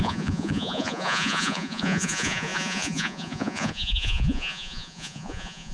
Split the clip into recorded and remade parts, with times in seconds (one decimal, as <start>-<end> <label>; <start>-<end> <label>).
0.0-5.7 remade